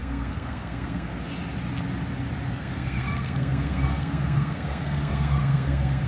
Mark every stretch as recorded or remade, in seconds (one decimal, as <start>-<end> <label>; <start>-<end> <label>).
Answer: 0.0-1.1 remade; 1.1-2.5 recorded; 2.5-6.1 remade